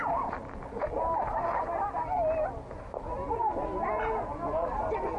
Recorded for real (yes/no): yes